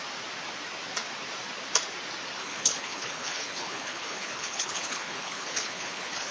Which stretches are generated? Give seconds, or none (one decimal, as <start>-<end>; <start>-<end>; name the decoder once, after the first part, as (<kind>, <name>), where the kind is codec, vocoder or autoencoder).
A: 2.4-6.3 (codec, HILCodec)